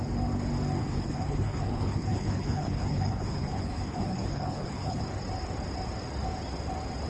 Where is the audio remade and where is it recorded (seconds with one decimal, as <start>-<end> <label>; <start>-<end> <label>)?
0.0-0.8 recorded; 0.8-5.0 remade; 5.0-7.1 recorded